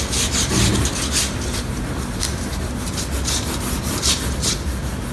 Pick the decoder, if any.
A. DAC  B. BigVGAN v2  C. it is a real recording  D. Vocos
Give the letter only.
C